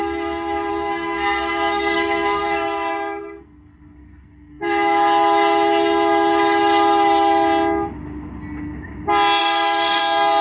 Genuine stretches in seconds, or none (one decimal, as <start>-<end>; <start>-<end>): 0.0-0.7; 4.6-9.4; 10.0-10.4